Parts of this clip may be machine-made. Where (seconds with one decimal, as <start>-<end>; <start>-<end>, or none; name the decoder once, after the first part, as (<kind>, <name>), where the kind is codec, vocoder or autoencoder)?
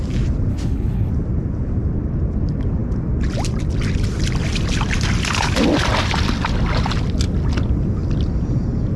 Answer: 0.5-1.1 (codec, HILCodec)